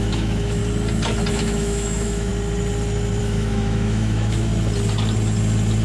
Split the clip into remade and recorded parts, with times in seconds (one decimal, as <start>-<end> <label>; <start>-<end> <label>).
0.0-0.6 remade; 0.6-1.3 recorded; 1.3-2.3 remade; 2.3-3.2 recorded; 3.2-4.5 remade; 4.5-5.8 recorded